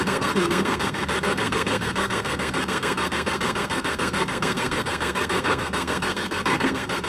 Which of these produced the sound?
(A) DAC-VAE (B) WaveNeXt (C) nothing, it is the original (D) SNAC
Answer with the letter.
D